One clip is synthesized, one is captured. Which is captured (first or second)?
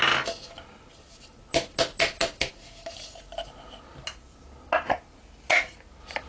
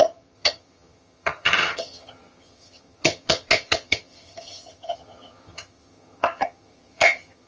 first